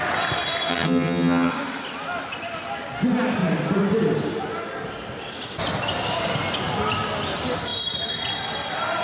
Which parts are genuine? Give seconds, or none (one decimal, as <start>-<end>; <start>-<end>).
0.0-0.7; 1.5-9.0